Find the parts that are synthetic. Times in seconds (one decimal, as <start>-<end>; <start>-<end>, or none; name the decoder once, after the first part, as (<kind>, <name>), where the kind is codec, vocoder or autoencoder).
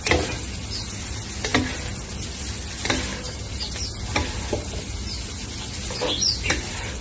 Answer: none